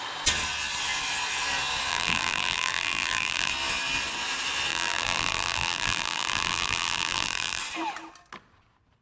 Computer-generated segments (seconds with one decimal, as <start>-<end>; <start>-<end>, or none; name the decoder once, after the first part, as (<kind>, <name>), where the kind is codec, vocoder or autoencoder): 1.9-3.5 (vocoder, BigVGAN v2); 4.7-7.6